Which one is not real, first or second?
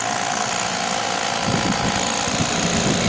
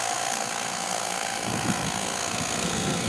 second